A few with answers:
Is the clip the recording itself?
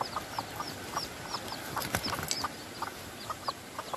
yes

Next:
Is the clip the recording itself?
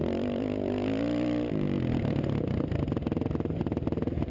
yes